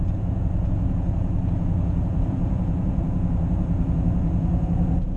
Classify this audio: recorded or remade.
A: remade